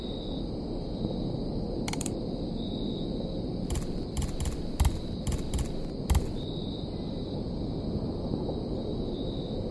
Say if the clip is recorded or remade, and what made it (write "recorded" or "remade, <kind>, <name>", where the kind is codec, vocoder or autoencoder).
recorded